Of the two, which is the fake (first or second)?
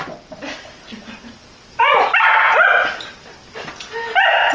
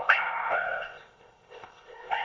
second